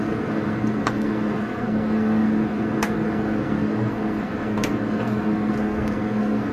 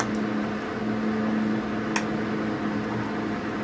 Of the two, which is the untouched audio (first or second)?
second